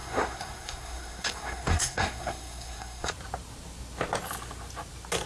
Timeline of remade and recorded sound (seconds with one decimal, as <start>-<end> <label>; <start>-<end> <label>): 0.0-3.1 remade; 3.1-5.3 recorded